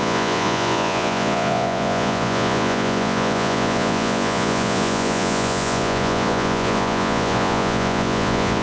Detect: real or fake fake